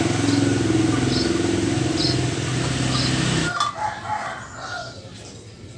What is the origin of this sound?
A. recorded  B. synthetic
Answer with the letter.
A